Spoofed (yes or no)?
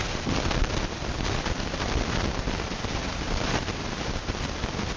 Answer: no